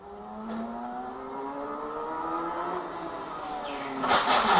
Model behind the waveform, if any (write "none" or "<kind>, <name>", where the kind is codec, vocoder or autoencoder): none